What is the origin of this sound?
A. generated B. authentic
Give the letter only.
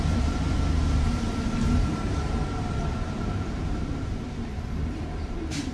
A